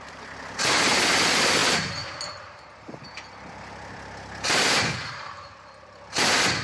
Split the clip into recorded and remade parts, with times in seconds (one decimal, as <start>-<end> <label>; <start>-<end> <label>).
0.0-6.6 recorded